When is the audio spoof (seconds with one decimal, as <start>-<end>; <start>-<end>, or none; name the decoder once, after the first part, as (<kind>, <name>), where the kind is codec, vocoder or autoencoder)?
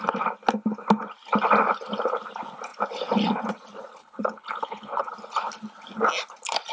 4.0-5.1 (codec, HILCodec)